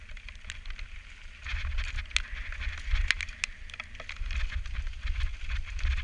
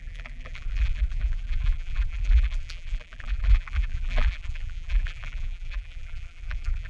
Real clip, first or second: first